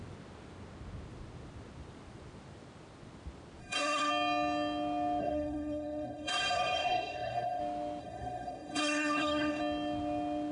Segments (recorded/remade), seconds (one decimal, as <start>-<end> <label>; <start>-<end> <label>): 0.0-3.6 recorded; 3.6-4.1 remade; 4.1-5.2 recorded; 5.2-7.6 remade; 7.6-8.0 recorded; 8.0-9.6 remade; 9.6-10.5 recorded